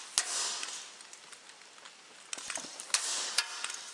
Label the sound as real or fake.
real